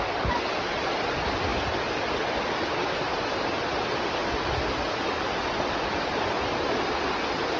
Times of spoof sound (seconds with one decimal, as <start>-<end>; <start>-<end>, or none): none